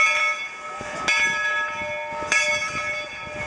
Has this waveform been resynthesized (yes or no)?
no